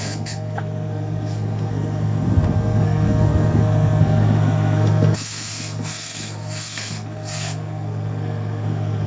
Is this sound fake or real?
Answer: fake